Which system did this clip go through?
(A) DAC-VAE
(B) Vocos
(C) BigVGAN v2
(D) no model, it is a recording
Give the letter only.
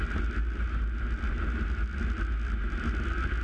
D